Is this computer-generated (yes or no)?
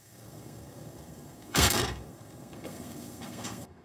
yes